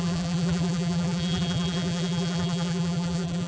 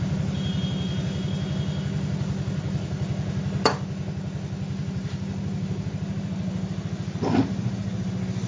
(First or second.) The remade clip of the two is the first